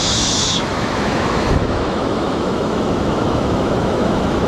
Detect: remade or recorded remade